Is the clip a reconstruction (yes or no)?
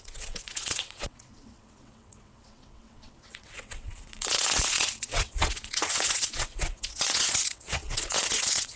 yes